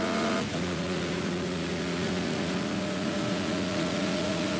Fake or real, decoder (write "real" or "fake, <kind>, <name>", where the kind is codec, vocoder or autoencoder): fake, vocoder, Vocos